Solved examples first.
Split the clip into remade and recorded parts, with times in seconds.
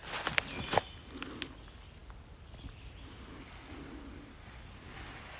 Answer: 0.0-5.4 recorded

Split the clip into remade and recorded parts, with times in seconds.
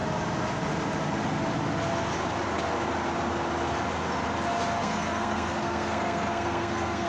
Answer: 0.0-4.8 recorded; 4.8-7.1 remade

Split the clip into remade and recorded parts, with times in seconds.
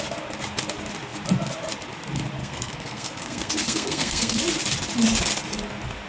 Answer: 0.0-2.4 recorded; 2.4-4.4 remade; 4.4-6.1 recorded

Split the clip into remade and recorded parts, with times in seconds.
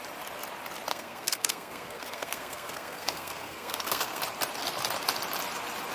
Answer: 0.0-0.9 recorded; 0.9-4.2 remade; 4.2-5.9 recorded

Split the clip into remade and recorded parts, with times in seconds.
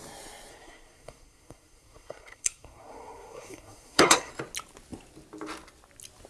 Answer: 0.0-0.5 recorded; 0.5-4.3 remade; 4.3-6.3 recorded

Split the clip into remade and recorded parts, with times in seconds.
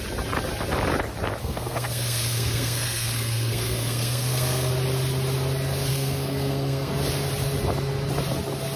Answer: 0.0-1.4 recorded; 1.4-4.7 remade; 4.7-5.9 recorded; 5.9-6.9 remade; 6.9-8.8 recorded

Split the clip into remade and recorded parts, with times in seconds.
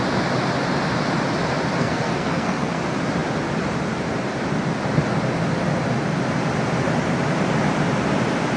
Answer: 0.0-1.8 recorded; 1.8-2.8 remade; 2.8-8.6 recorded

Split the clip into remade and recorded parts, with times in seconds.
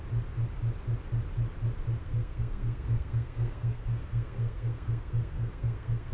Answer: 0.0-2.0 recorded; 2.0-6.1 remade